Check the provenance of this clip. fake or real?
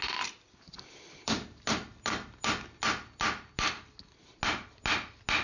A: real